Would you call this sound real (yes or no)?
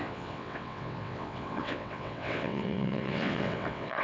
no